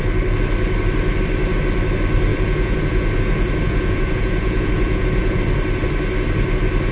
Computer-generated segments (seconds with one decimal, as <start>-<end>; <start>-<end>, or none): 2.3-5.4